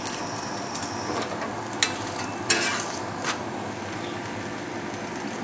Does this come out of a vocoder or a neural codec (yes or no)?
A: no